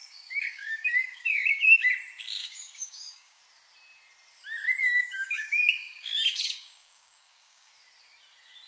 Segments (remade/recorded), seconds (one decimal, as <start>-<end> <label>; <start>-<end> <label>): 0.0-1.9 remade; 1.9-2.4 recorded; 2.4-3.4 remade; 3.4-4.8 recorded; 4.8-7.7 remade; 7.7-8.7 recorded